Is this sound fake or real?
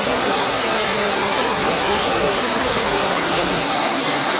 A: fake